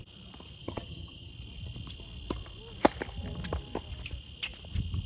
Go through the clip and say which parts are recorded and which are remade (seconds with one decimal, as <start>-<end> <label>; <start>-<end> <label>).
0.0-0.6 recorded; 0.6-1.3 remade; 1.3-5.1 recorded